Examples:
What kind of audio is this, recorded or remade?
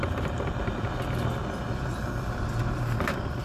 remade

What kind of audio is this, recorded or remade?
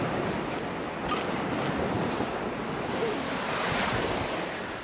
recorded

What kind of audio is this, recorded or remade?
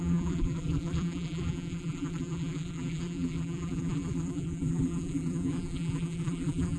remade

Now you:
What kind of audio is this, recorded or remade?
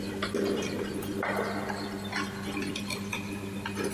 recorded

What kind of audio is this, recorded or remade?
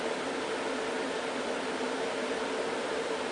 recorded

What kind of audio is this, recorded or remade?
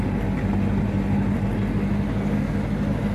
recorded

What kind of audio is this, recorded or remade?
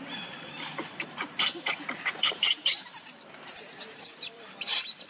remade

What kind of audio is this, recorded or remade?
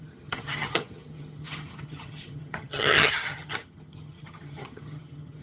remade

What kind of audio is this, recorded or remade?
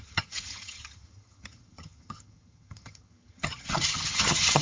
remade